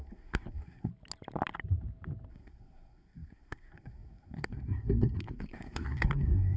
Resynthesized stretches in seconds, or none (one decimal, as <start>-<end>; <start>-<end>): 0.0-0.9; 2.3-6.6